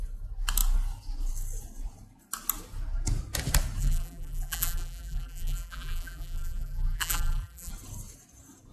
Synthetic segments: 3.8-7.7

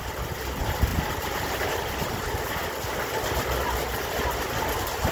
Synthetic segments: 0.9-1.7

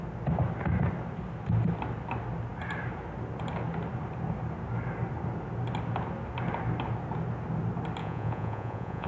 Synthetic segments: 8.0-9.1